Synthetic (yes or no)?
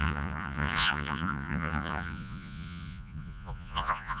yes